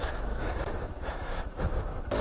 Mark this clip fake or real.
fake